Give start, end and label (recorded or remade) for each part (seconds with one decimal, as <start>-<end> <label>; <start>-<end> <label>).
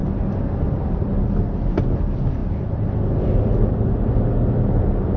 0.0-5.2 recorded